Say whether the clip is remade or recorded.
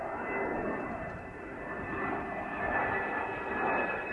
recorded